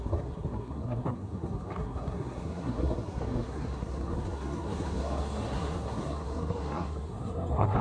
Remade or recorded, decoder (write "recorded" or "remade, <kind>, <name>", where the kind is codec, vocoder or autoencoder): remade, codec, SNAC